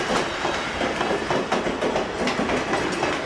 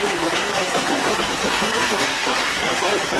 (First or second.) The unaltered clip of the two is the first